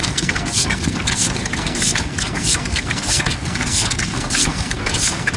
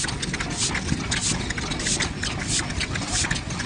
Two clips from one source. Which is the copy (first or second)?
first